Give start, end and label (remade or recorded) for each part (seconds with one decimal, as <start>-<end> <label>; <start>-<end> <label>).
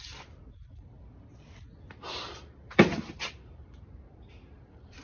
0.0-2.0 recorded; 2.0-5.0 remade